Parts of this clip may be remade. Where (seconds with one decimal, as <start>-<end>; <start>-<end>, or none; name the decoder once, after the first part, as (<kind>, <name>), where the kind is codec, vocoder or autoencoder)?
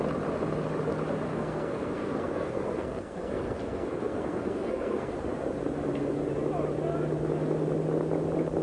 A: 1.3-5.1 (codec, SNAC)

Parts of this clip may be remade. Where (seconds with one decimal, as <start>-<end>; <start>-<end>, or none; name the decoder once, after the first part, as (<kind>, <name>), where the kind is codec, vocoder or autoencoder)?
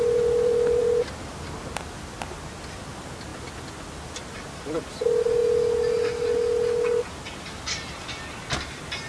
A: none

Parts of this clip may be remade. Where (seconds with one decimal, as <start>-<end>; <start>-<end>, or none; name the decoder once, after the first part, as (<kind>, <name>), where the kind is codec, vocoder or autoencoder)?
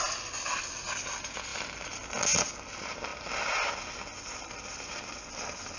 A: none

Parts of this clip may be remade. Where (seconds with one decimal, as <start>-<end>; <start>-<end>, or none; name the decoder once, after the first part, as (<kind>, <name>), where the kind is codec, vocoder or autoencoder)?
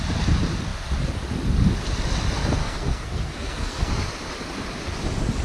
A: 2.6-3.9 (codec, SNAC)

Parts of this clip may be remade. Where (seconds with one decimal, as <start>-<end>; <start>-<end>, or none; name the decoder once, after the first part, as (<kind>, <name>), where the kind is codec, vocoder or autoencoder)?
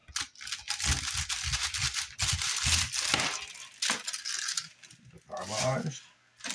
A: none